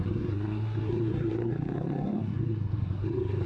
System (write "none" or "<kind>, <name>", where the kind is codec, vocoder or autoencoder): codec, SNAC